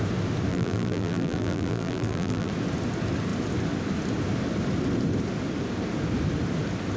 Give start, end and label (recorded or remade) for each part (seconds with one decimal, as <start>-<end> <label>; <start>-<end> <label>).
0.0-0.5 recorded; 0.5-2.5 remade; 2.5-7.0 recorded